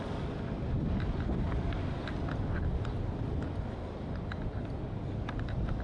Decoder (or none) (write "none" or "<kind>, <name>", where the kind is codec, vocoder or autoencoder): none